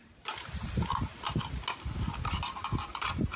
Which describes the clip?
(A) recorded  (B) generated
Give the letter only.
A